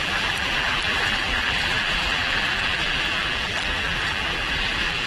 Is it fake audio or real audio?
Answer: fake